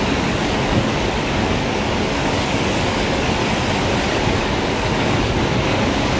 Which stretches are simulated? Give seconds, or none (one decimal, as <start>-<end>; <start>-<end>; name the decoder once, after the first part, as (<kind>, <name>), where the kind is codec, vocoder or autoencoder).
0.0-3.4 (codec, DAC); 4.0-6.2